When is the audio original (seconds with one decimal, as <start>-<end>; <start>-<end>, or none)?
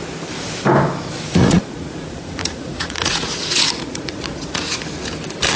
0.0-1.4; 4.8-5.6